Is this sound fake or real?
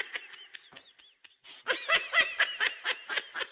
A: real